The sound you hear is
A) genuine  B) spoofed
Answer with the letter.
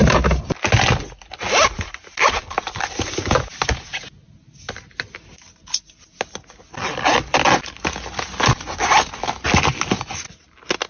A